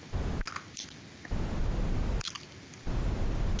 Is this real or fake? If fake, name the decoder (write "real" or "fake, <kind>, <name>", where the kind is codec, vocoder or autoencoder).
real